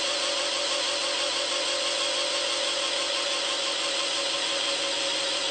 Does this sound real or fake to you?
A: real